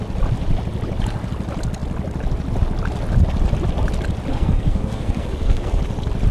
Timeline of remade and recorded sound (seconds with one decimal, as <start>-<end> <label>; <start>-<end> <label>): 0.0-4.3 recorded; 4.3-5.8 remade; 5.8-6.3 recorded